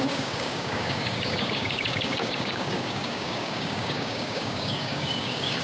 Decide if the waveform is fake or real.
fake